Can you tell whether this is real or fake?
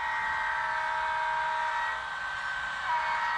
real